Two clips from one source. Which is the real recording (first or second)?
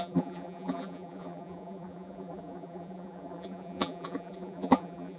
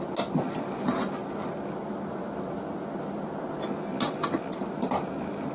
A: second